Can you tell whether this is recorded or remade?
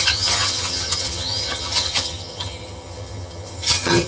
remade